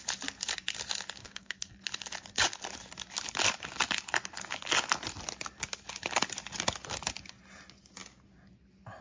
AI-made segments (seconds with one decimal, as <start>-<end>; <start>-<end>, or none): 1.2-1.7